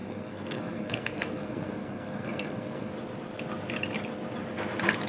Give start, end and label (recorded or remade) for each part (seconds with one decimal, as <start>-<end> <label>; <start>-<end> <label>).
0.0-2.9 remade; 2.9-5.1 recorded